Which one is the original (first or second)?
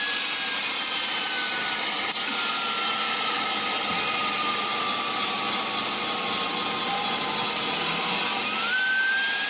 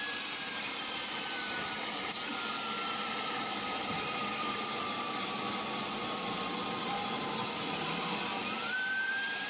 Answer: first